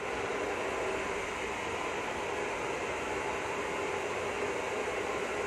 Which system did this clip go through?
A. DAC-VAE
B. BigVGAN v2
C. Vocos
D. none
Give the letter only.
D